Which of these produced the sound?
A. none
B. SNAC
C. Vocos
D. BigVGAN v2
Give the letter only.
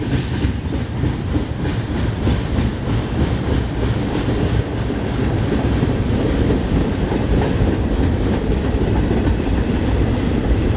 D